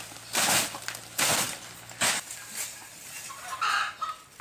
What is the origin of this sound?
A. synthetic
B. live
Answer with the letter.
B